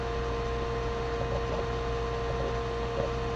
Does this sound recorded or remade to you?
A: recorded